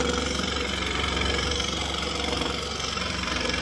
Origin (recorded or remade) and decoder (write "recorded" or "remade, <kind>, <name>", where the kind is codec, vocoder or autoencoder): remade, vocoder, BigVGAN v2